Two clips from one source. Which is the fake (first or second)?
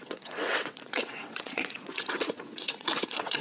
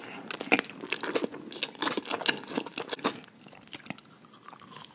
first